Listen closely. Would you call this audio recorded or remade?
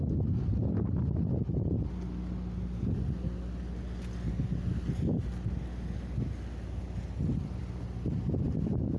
recorded